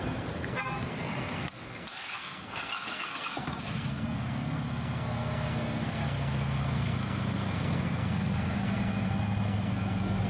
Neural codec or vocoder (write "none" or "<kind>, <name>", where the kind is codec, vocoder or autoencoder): codec, SNAC